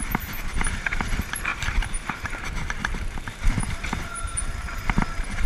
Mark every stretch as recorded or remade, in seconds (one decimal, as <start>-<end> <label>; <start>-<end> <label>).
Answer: 0.0-0.7 remade; 0.7-1.5 recorded; 1.5-4.8 remade; 4.8-5.5 recorded